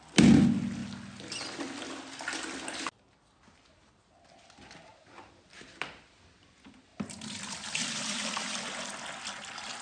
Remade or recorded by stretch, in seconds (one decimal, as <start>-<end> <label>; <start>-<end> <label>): 0.0-9.8 recorded